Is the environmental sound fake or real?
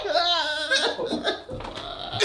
real